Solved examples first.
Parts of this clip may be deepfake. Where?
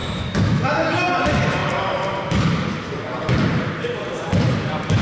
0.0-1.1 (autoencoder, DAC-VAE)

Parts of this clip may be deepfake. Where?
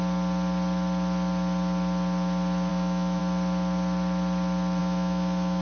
2.7-3.2 (autoencoder, DAC-VAE); 4.8-5.6